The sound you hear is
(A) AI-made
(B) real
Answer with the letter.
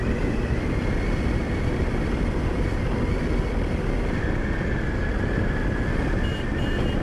B